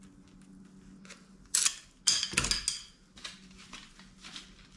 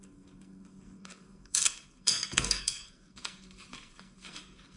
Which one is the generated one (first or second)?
second